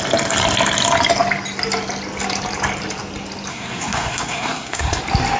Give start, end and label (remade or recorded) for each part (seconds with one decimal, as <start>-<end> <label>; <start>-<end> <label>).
0.0-3.5 recorded; 3.5-5.0 remade; 5.0-5.4 recorded